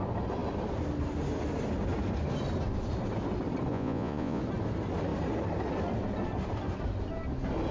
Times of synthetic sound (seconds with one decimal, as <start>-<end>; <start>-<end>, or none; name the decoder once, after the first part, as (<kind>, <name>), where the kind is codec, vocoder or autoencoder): 3.7-4.4 (vocoder, Vocos)